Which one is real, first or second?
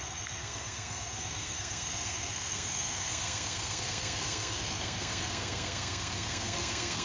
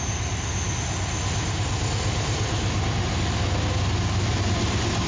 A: second